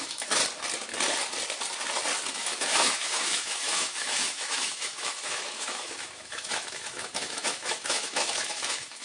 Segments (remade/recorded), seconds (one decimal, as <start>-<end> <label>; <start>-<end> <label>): 0.0-0.4 remade; 0.4-2.3 recorded; 2.3-9.0 remade